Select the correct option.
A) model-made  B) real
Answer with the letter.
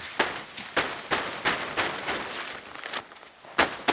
B